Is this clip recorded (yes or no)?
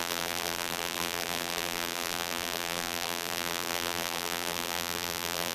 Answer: no